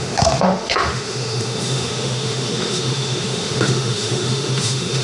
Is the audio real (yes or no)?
no